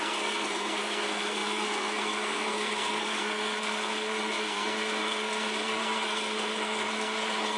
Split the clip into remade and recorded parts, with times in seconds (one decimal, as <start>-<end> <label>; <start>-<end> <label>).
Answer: 0.0-7.6 remade